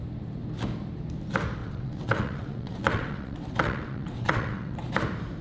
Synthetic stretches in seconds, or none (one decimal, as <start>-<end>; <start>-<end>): 1.6-4.8